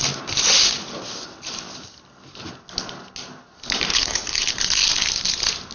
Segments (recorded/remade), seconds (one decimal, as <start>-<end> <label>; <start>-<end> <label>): 0.0-3.9 recorded; 3.9-4.5 remade; 4.5-5.7 recorded

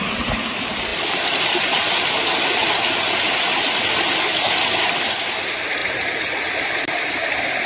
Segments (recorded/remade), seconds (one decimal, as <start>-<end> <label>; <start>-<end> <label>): 0.0-7.7 recorded

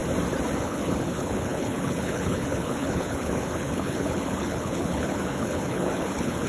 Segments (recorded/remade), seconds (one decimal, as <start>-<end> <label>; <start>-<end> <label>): 0.0-0.6 recorded; 0.6-6.5 remade

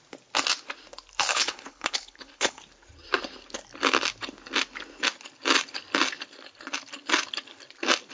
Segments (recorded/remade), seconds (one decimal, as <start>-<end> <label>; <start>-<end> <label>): 0.0-1.3 recorded; 1.3-2.6 remade; 2.6-8.1 recorded

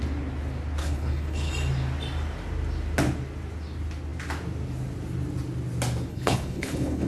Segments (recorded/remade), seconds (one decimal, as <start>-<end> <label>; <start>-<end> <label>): 0.0-0.8 recorded; 0.8-1.5 remade; 1.5-6.1 recorded; 6.1-7.1 remade